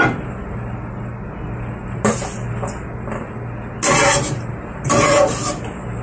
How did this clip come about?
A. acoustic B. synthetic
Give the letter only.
A